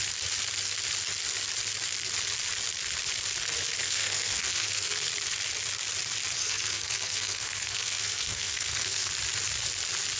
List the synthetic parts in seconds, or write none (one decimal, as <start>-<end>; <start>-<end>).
3.8-5.1; 6.4-9.1